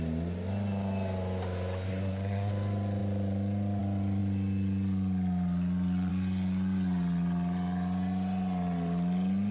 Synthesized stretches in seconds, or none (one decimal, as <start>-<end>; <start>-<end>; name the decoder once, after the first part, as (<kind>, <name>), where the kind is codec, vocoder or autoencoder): 1.9-2.5 (codec, SNAC)

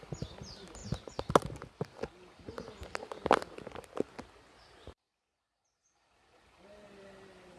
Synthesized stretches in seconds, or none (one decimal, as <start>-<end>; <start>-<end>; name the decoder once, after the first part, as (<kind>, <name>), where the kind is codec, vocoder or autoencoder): none

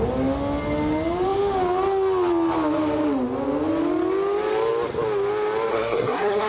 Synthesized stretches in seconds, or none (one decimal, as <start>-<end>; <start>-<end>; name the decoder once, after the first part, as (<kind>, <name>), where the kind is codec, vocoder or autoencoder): 5.7-6.5 (codec, SNAC)

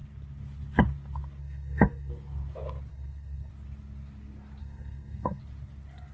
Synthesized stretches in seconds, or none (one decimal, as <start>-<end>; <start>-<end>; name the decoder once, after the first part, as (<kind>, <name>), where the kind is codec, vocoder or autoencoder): 1.4-2.1 (codec, SNAC); 2.9-3.5; 4.6-5.4

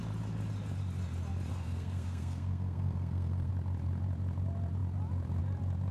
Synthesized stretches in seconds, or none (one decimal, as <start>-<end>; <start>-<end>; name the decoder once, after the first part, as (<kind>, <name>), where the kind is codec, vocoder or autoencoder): 1.5-3.5 (codec, SNAC)